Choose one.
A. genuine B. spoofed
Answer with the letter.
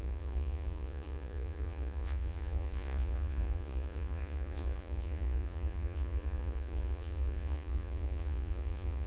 B